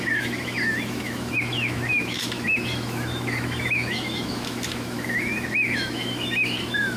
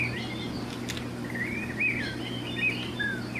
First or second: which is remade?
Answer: first